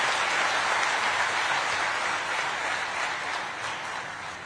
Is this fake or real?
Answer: real